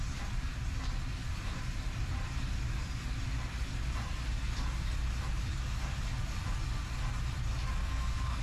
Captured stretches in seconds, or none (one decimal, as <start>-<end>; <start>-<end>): 0.0-7.8